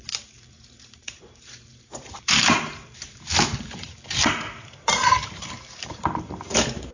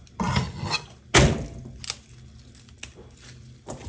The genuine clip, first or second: second